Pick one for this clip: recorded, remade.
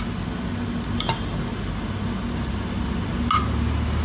recorded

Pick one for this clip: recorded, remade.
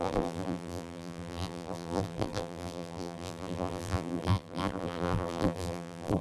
remade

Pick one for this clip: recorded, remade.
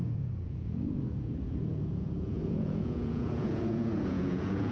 remade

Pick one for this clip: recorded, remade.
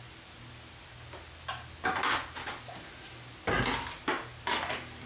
recorded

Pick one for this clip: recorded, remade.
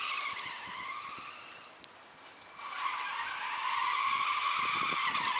recorded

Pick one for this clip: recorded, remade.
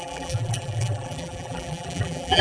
remade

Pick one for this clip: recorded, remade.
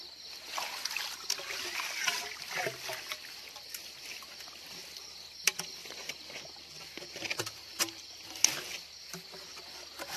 recorded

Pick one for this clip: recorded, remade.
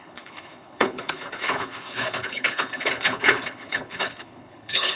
remade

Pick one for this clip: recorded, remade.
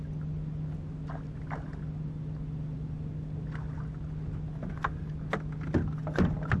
recorded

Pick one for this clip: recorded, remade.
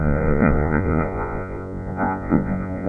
remade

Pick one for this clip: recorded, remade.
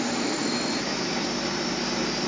recorded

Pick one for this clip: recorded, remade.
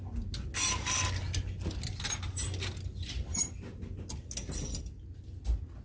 recorded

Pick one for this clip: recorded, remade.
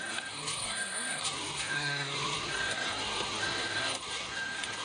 remade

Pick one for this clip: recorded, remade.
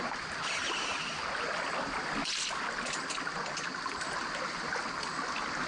recorded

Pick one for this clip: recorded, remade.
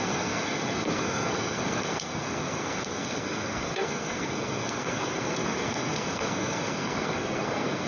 remade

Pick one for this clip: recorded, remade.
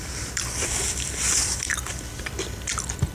remade